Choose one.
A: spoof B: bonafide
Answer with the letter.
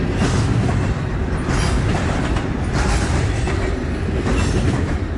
B